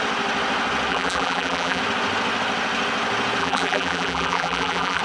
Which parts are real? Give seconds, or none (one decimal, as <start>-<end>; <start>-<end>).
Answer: 0.0-0.9; 1.8-3.4